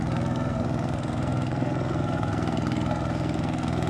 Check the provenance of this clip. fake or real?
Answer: fake